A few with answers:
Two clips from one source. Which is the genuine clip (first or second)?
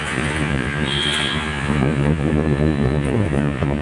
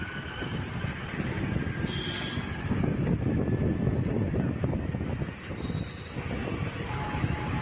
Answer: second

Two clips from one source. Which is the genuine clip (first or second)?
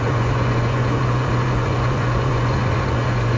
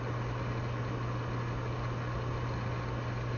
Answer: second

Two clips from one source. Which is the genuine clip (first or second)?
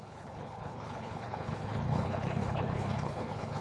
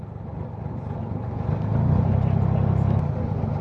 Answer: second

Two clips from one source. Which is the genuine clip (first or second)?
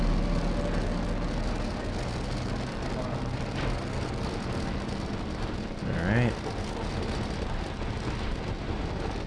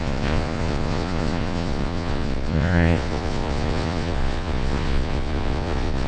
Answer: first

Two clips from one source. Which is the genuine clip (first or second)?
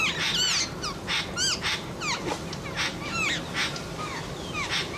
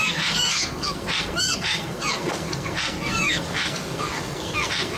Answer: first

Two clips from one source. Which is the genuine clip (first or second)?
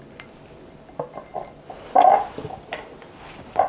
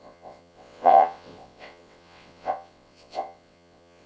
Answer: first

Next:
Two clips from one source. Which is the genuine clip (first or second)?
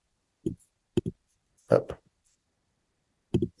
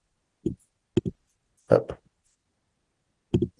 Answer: second